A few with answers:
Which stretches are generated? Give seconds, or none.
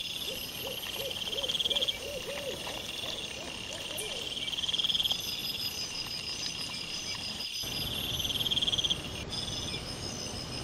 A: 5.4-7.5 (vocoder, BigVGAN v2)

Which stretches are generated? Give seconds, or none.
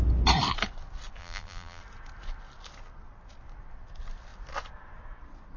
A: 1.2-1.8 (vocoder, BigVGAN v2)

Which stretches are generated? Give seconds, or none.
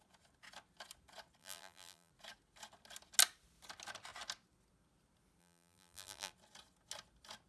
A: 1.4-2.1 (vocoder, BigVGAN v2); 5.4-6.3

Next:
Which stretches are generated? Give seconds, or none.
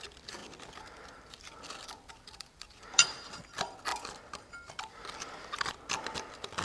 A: 0.0-3.9 (vocoder, BigVGAN v2); 4.7-6.6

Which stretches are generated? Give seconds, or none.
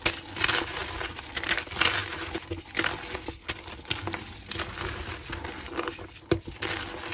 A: none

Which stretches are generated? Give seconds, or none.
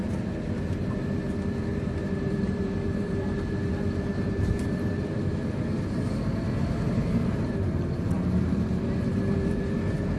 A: 1.7-3.5 (vocoder, BigVGAN v2); 4.1-4.9; 6.6-10.2